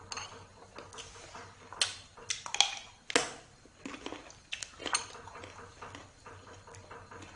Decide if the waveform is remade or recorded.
recorded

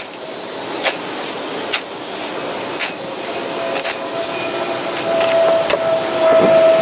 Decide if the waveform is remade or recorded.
recorded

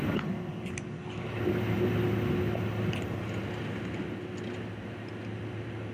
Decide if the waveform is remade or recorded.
recorded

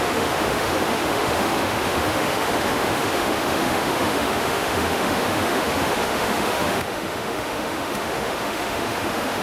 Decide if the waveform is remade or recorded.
remade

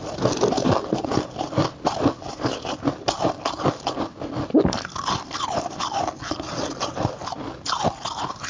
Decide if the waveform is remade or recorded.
recorded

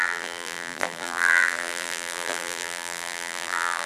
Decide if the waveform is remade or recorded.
remade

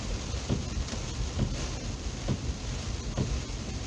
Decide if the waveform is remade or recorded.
recorded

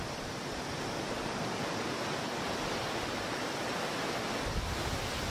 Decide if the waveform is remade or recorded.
recorded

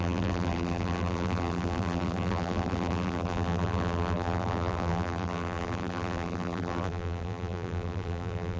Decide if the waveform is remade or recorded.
remade